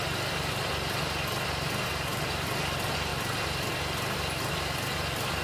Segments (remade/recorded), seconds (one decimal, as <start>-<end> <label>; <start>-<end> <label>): 0.0-5.4 recorded